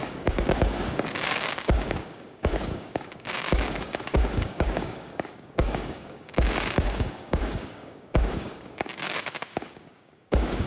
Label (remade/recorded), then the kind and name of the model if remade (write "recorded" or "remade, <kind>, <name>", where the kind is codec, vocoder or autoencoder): remade, codec, DAC